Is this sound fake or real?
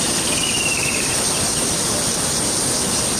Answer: real